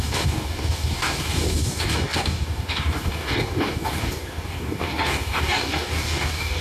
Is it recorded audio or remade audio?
remade